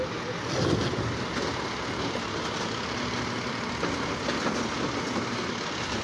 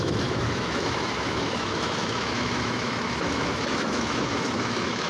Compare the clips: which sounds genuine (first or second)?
first